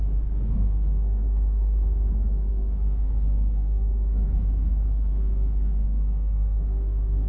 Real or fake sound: fake